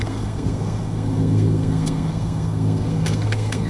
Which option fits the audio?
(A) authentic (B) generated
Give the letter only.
B